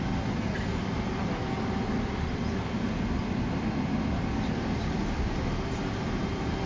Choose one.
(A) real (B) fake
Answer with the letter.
A